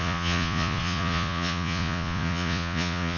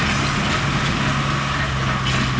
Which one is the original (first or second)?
second